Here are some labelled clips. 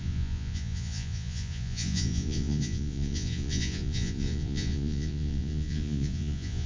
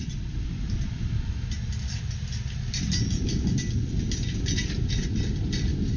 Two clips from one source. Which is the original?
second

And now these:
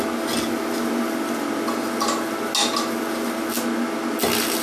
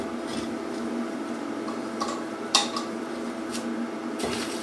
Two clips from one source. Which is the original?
first